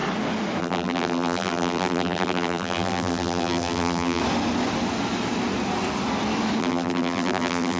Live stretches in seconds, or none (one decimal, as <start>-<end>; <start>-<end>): 0.0-0.6; 4.2-6.6